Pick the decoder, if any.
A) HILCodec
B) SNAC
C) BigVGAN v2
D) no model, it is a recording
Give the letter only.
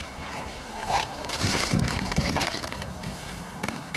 B